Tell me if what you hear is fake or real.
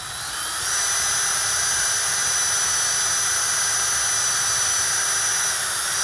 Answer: real